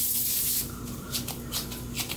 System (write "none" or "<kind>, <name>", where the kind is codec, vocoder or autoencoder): none